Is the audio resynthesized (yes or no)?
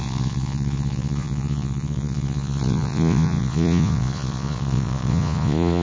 yes